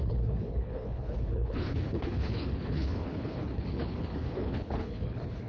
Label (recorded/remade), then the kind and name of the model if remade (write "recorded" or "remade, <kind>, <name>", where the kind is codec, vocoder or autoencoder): remade, codec, HILCodec